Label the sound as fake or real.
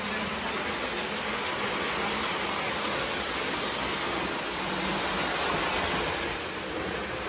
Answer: real